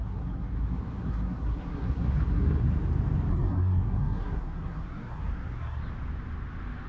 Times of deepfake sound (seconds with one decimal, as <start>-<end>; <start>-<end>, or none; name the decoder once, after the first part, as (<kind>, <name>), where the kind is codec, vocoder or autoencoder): 0.0-2.8 (codec, SNAC); 3.3-5.8